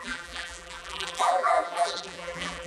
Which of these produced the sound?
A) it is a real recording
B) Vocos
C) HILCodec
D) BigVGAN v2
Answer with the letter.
D